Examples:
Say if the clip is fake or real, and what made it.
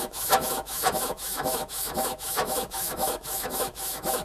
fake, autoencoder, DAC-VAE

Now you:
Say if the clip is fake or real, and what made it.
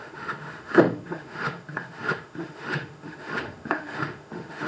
fake, autoencoder, DAC-VAE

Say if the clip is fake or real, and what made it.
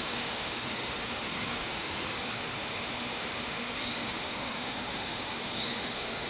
fake, autoencoder, DAC-VAE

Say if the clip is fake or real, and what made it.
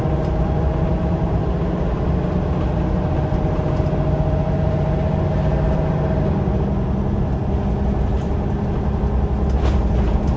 real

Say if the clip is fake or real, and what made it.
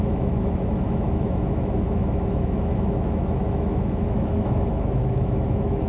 fake, autoencoder, DAC-VAE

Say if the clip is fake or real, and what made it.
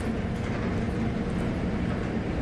real